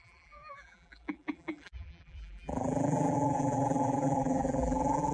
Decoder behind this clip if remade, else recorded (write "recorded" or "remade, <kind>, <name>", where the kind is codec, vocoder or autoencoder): remade, vocoder, BigVGAN v2